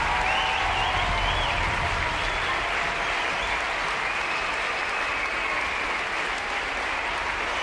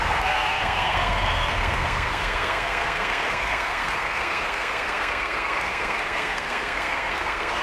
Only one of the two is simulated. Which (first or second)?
second